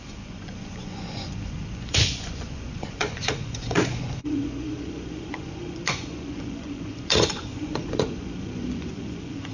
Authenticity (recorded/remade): remade